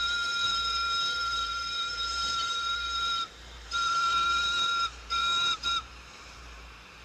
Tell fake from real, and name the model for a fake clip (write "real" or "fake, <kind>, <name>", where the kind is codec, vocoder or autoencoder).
fake, vocoder, BigVGAN v2